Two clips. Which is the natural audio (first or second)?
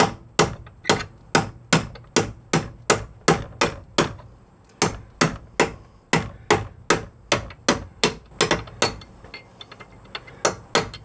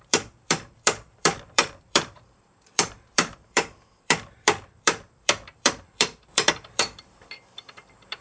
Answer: first